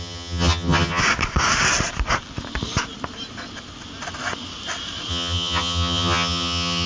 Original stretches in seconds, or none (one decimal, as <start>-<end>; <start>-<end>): 1.0-5.1